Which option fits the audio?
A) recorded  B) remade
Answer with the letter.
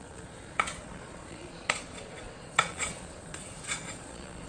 B